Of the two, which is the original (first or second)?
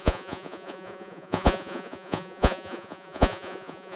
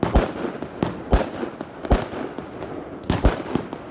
second